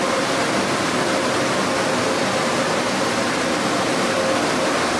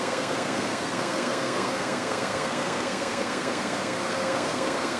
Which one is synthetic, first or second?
second